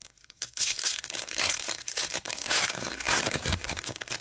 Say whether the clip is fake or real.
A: fake